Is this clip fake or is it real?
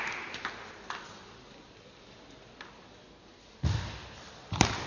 real